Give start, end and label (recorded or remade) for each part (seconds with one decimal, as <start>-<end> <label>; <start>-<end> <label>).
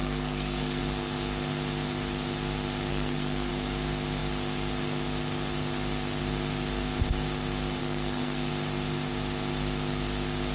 0.0-0.8 remade; 0.8-2.9 recorded; 2.9-3.5 remade; 3.5-7.8 recorded; 7.8-8.5 remade; 8.5-10.5 recorded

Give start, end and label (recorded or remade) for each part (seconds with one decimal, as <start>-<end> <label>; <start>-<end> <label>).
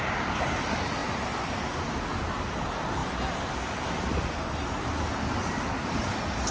0.0-6.5 recorded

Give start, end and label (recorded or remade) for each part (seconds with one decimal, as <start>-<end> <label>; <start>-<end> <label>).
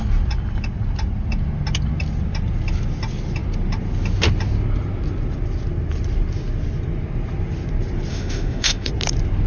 0.0-8.1 recorded; 8.1-8.9 remade; 8.9-9.5 recorded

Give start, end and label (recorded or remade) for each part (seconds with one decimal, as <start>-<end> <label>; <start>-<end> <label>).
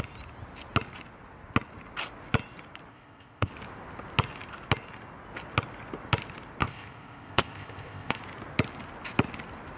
0.0-2.9 recorded; 2.9-3.5 remade; 3.5-6.6 recorded; 6.6-8.2 remade; 8.2-9.8 recorded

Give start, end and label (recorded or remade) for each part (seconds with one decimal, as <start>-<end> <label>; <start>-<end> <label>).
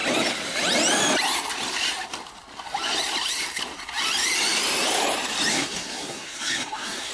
0.0-5.5 recorded; 5.5-7.1 remade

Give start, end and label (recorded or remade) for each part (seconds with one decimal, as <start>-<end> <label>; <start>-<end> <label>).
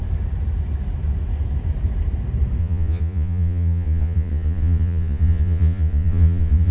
0.0-2.6 recorded; 2.6-6.7 remade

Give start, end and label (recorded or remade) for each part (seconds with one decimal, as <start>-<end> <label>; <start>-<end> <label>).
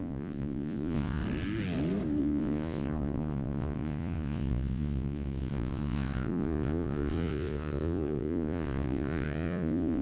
0.0-1.2 remade; 1.2-2.2 recorded; 2.2-10.0 remade